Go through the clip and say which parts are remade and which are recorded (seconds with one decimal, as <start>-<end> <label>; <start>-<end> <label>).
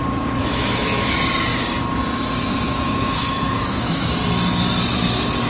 0.0-0.4 recorded; 0.4-1.1 remade; 1.1-2.5 recorded; 2.5-4.1 remade; 4.1-5.5 recorded